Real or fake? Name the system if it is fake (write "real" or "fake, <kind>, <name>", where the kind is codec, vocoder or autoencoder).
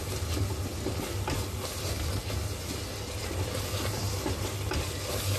real